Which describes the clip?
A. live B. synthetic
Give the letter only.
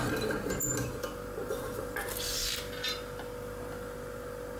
A